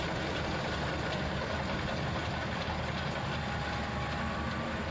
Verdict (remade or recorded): recorded